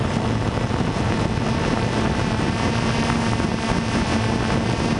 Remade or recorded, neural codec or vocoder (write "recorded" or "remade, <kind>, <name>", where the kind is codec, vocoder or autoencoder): recorded